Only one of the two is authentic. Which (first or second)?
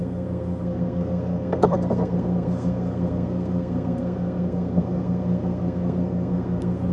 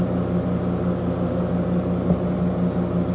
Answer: second